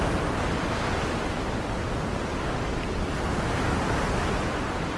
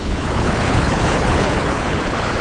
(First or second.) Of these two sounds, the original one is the first